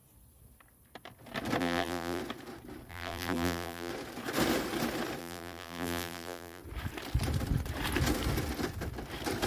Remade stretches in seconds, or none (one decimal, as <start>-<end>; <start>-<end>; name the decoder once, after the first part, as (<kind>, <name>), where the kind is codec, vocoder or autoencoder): 1.6-2.2 (vocoder, BigVGAN v2); 2.9-3.9; 5.2-6.6